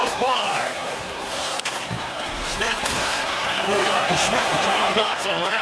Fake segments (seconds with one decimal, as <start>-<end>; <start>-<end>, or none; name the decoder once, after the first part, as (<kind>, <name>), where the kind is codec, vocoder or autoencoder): 0.0-5.6 (codec, SNAC)